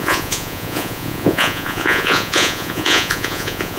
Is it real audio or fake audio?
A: fake